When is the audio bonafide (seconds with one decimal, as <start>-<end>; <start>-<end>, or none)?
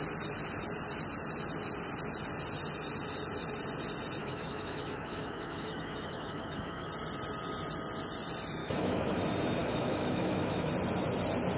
0.0-4.2; 6.9-8.6; 9.2-9.6; 10.7-11.6